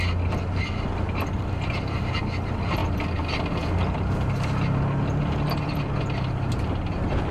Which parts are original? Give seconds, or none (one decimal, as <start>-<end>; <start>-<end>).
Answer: 0.0-7.3